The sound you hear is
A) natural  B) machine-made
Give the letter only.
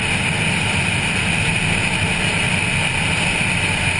A